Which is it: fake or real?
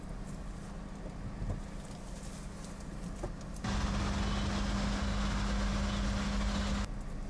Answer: real